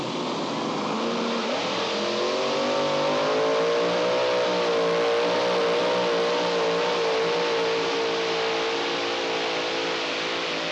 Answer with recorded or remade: recorded